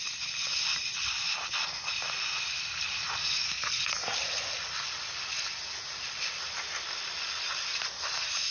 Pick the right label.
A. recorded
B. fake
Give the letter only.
A